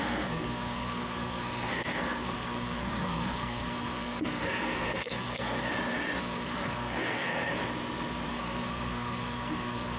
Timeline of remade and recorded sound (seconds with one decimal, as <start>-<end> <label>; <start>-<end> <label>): 0.0-5.7 remade; 5.7-6.2 recorded; 6.2-7.6 remade; 7.6-8.3 recorded; 8.3-10.0 remade